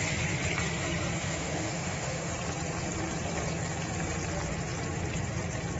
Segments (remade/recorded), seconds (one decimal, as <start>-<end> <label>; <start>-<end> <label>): 0.0-1.2 recorded; 1.2-2.3 remade; 2.3-5.8 recorded